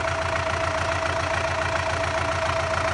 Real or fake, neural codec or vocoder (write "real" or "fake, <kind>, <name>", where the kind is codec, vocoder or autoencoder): real